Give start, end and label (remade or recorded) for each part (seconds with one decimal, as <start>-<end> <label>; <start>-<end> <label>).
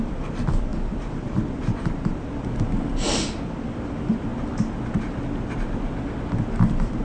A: 0.0-4.3 remade; 4.3-6.5 recorded; 6.5-7.0 remade